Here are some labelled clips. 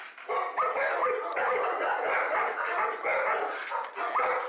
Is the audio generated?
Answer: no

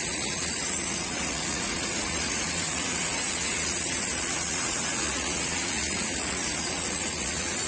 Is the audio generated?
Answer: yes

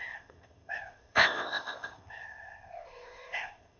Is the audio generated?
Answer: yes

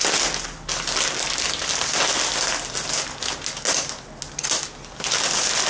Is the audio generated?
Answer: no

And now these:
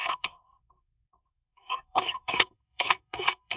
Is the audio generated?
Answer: yes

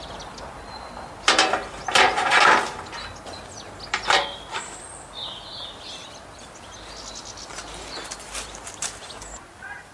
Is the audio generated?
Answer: no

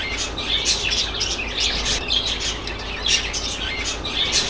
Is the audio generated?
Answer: no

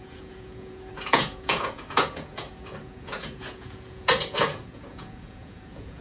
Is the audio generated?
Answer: yes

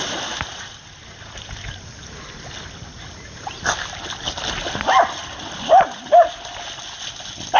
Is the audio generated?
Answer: no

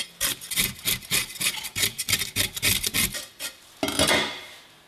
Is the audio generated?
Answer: no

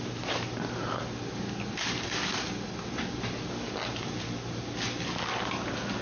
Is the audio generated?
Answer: no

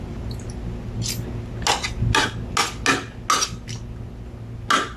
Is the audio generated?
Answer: no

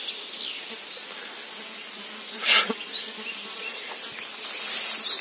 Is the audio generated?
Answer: no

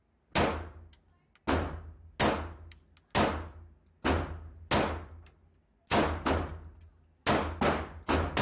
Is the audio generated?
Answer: no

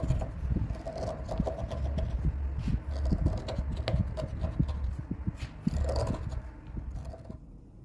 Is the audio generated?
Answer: no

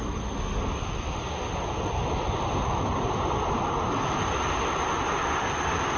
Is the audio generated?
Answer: no